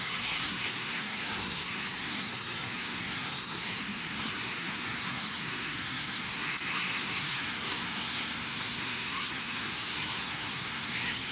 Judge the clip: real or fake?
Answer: fake